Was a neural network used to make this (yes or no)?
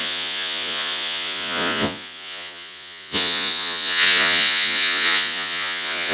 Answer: yes